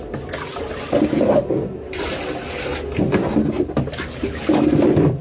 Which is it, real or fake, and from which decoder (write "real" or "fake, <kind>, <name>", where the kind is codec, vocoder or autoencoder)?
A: real